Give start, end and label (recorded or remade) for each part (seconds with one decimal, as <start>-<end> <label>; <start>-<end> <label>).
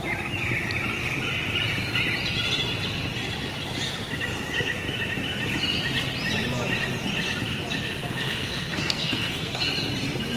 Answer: 0.0-8.0 recorded; 8.0-9.6 remade; 9.6-10.4 recorded